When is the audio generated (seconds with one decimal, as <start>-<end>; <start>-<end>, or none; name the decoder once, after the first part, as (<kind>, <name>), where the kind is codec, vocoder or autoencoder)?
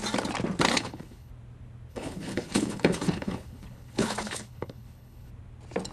0.7-1.3 (codec, HILCodec); 1.9-5.3